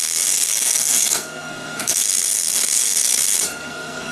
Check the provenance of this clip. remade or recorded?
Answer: remade